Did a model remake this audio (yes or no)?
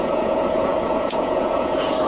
yes